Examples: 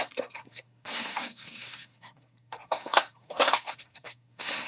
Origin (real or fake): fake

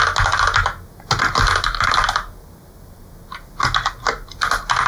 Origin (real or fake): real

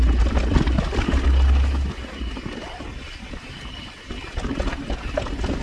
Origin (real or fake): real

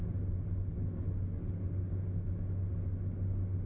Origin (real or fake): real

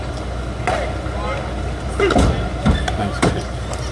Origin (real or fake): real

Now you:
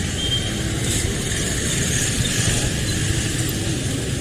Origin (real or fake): real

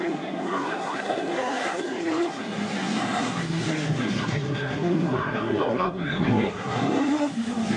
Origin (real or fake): fake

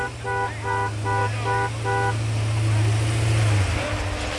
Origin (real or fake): real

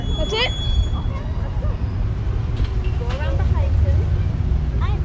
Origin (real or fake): real